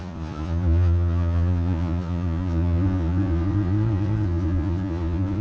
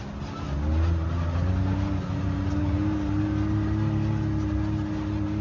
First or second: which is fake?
first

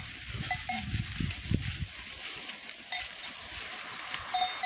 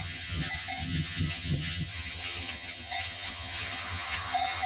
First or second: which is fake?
second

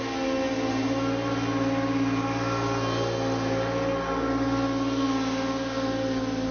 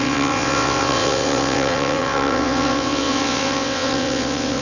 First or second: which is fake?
second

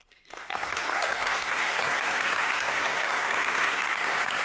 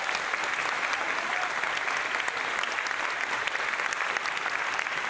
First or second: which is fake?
first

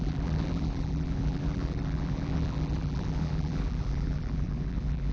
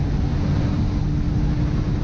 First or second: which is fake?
first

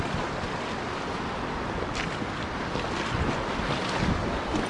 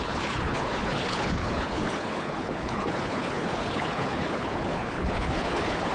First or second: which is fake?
second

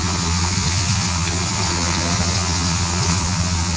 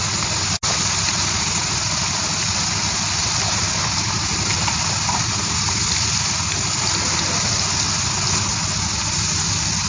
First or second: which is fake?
first